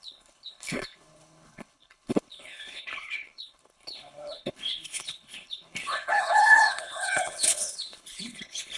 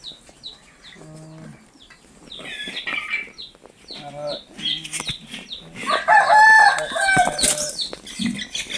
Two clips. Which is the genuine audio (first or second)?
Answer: second